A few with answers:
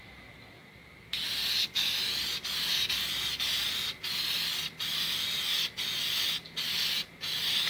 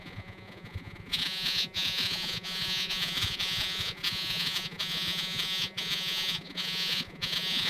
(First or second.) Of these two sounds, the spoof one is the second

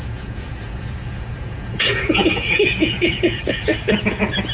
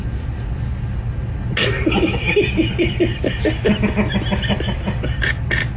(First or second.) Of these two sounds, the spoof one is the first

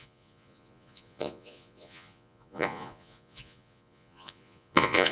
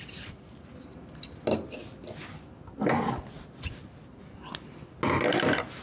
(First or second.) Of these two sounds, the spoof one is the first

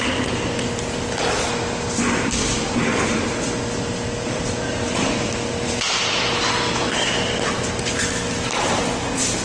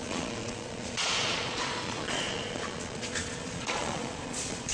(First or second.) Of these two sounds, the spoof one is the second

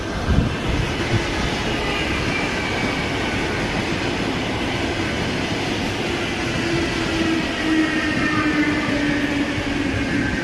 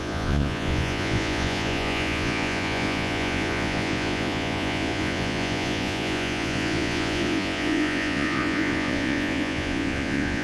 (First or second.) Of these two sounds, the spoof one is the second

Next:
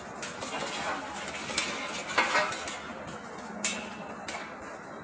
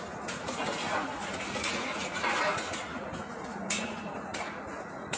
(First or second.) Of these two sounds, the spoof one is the second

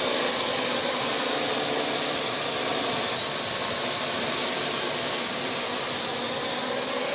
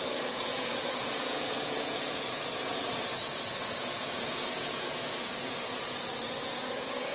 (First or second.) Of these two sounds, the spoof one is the second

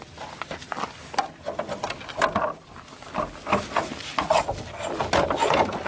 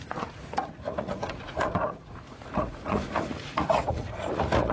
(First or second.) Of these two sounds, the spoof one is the second